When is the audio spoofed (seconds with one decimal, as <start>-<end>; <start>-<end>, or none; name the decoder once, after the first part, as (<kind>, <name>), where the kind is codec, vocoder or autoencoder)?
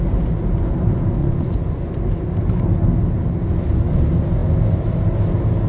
1.2-1.9 (vocoder, Vocos)